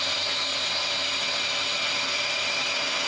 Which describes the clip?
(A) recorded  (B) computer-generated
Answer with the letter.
A